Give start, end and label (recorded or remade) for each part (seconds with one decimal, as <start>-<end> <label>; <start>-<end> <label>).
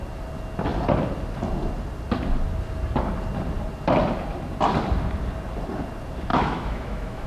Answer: 0.0-6.3 recorded; 6.3-7.3 remade